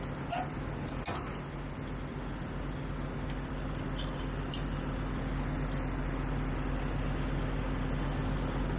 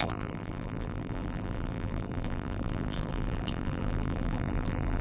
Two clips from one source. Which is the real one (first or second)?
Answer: first